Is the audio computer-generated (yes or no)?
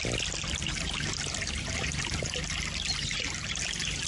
no